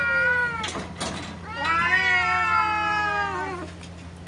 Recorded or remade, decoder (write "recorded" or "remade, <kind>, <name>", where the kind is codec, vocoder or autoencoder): recorded